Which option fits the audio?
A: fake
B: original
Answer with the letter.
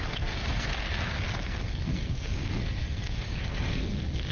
A